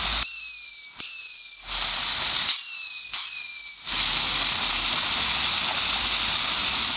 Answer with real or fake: real